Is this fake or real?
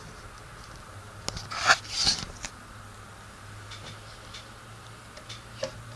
real